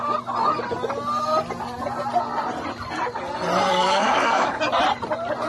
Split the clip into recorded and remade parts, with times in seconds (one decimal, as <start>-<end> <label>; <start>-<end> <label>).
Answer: 0.0-3.7 recorded; 3.7-4.6 remade; 4.6-5.5 recorded